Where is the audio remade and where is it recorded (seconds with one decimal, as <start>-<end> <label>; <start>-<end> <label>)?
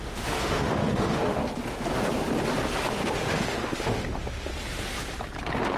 0.0-1.4 remade; 1.4-2.9 recorded; 2.9-4.5 remade; 4.5-5.8 recorded